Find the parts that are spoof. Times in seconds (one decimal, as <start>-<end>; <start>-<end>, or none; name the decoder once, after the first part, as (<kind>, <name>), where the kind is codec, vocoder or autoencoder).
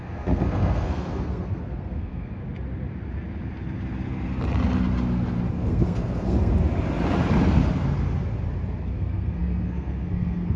0.0-2.4 (codec, SNAC); 5.5-6.5; 8.8-10.6